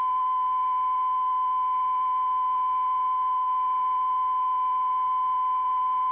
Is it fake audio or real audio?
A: real